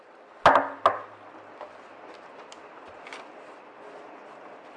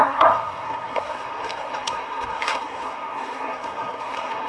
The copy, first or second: second